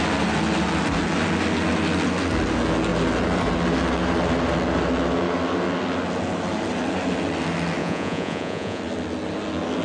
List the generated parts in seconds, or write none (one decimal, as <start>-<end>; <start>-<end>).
7.8-8.8